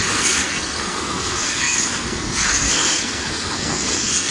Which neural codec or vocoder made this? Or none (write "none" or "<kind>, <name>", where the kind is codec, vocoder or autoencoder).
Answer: codec, SNAC